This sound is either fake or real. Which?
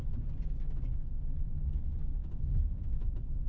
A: real